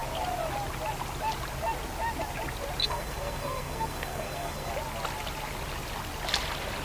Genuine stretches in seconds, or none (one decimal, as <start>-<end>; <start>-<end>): 0.0-2.8; 4.7-6.8